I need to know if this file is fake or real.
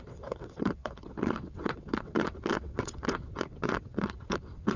fake